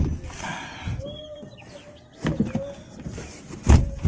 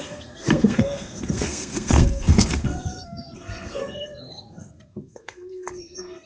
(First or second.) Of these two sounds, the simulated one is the second